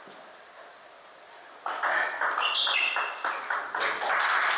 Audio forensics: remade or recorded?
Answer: recorded